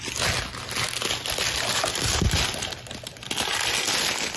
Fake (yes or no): no